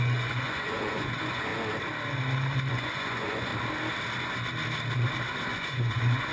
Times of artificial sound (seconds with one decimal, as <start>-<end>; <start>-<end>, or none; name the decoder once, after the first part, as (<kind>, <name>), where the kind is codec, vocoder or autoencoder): 0.0-1.5 (vocoder, Vocos); 2.7-3.5; 5.5-6.3